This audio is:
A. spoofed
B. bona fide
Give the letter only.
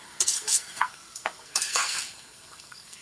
A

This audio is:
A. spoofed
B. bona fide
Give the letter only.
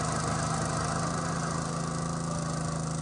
B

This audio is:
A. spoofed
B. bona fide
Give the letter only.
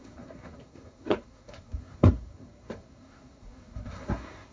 A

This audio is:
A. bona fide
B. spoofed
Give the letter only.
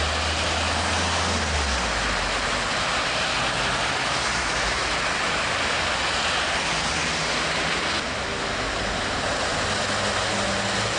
A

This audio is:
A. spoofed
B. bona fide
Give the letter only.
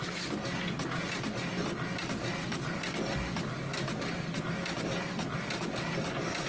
B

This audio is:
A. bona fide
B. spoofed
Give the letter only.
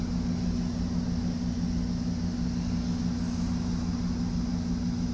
A